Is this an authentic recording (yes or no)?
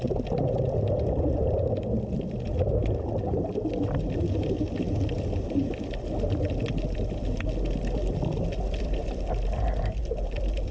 yes